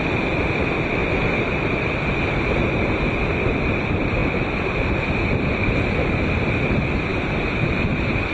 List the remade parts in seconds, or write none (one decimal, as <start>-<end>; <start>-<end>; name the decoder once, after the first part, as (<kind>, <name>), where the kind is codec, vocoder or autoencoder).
0.0-8.3 (vocoder, BigVGAN v2)